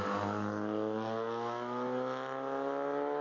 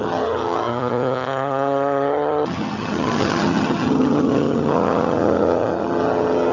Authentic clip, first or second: first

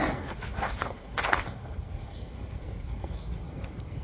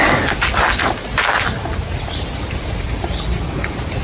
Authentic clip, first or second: second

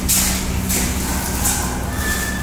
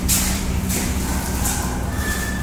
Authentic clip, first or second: first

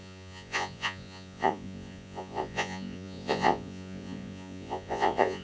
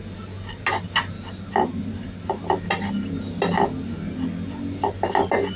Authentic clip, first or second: second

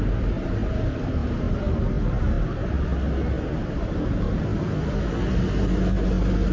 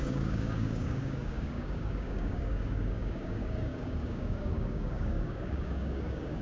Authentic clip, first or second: first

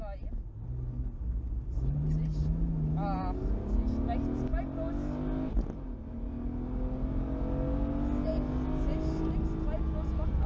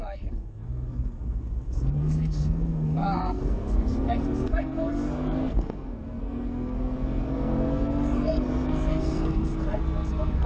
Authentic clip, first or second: first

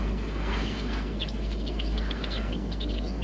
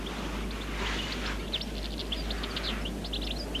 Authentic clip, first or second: second